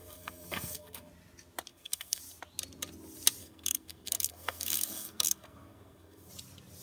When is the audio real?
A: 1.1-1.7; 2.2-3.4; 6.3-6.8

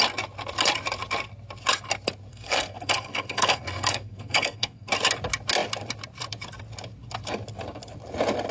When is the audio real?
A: 0.0-2.3; 4.9-8.5

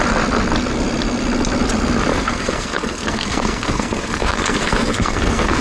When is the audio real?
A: 0.0-2.1

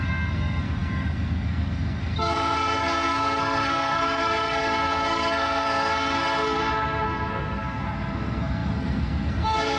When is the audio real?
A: none

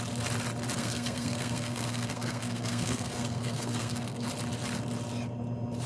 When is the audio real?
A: 0.0-0.8; 4.3-5.9

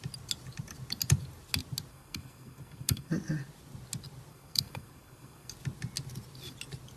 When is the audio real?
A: 0.0-1.9; 3.1-4.3; 5.5-7.0

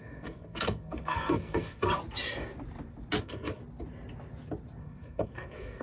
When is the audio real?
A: 2.0-3.2; 3.6-4.8